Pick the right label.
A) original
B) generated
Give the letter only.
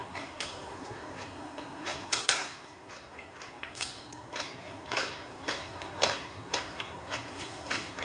B